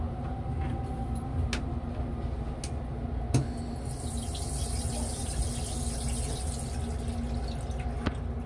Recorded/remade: recorded